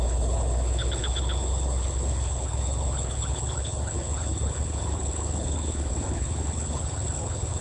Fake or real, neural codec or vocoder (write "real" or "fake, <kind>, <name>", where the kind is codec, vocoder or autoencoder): fake, codec, HILCodec